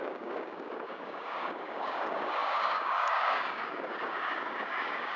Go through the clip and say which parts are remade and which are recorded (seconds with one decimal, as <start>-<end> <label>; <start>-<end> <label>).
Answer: 0.0-5.2 remade